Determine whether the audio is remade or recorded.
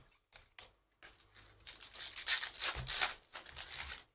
recorded